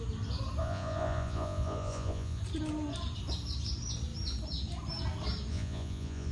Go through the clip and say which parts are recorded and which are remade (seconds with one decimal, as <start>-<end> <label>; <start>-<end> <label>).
0.0-0.6 recorded; 0.6-2.4 remade; 2.4-5.5 recorded; 5.5-6.3 remade